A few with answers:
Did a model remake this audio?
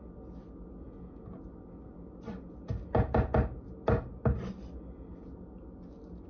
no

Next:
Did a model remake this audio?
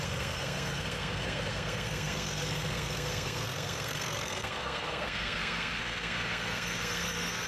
yes